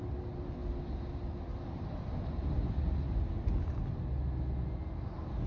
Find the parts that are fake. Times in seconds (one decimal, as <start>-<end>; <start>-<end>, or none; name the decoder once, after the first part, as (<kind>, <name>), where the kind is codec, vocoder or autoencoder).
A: none